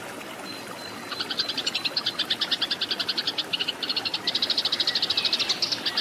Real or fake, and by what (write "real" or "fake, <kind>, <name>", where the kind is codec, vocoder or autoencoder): real